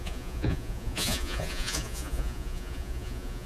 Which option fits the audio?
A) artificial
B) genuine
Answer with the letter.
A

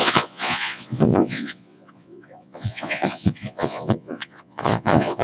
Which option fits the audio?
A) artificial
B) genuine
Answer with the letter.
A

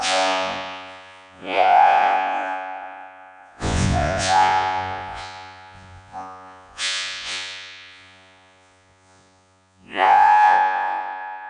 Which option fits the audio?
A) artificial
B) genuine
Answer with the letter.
A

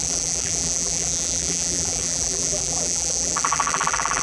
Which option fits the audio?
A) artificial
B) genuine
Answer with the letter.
A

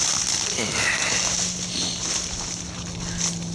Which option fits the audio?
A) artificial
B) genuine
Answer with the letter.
B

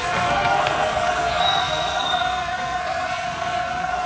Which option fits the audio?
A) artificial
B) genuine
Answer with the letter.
A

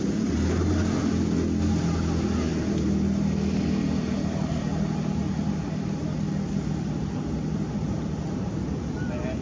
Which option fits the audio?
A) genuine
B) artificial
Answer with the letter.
A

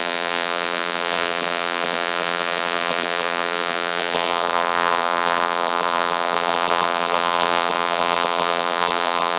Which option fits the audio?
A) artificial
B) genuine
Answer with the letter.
A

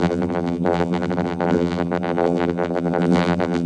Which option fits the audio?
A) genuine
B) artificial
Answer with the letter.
B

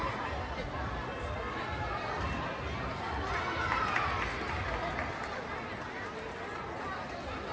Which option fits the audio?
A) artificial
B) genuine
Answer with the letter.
B